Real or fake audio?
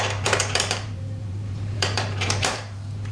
fake